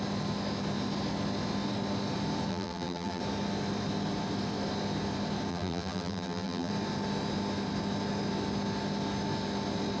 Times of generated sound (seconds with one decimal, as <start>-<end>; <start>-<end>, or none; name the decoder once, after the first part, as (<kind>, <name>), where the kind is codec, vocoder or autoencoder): 2.5-3.2 (vocoder, BigVGAN v2); 5.5-6.7